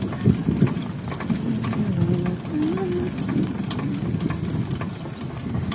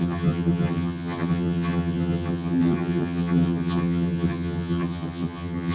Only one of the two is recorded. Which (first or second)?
first